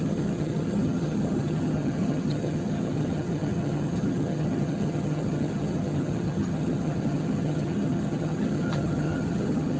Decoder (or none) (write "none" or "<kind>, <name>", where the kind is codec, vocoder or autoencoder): vocoder, HiFi-GAN